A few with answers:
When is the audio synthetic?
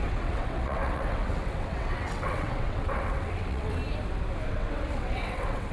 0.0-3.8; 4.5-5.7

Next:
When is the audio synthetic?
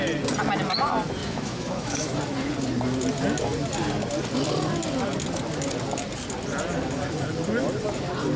1.2-2.2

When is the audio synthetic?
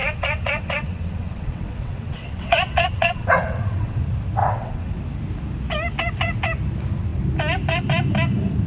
0.0-4.0; 4.4-5.0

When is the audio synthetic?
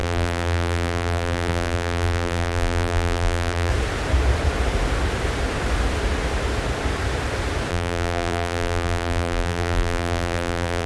0.0-3.7; 7.7-10.9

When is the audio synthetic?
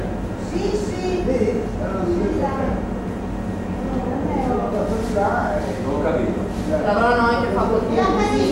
none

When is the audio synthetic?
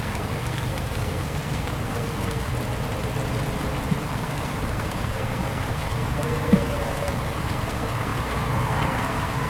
0.0-2.5; 4.0-9.5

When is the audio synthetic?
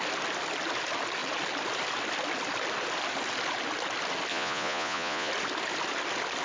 4.3-5.3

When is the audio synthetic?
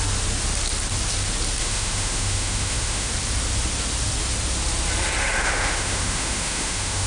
1.6-3.1; 5.4-7.1